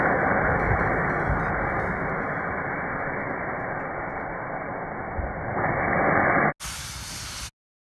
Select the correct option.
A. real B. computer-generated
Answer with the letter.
A